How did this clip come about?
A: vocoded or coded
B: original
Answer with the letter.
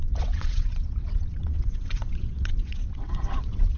A